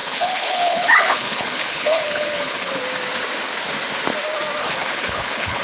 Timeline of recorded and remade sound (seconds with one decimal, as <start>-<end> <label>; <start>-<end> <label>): 0.0-2.8 remade; 2.8-4.6 recorded; 4.6-5.6 remade